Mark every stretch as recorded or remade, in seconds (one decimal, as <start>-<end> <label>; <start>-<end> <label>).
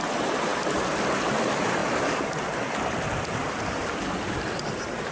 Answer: 0.0-1.8 recorded; 1.8-5.1 remade